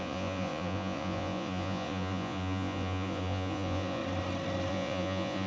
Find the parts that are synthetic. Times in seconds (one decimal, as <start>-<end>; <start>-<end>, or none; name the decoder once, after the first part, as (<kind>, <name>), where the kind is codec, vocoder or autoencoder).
0.0-4.0 (vocoder, Vocos); 4.7-5.5